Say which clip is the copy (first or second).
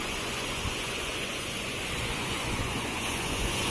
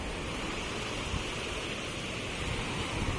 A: first